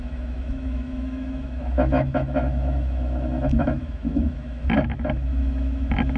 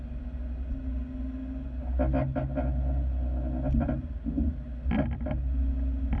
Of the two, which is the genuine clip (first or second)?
second